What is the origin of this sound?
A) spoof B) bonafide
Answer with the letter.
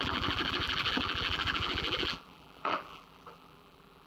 A